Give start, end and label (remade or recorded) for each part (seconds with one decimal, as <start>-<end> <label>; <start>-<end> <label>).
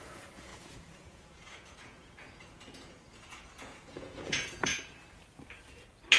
0.0-4.7 remade; 4.7-6.2 recorded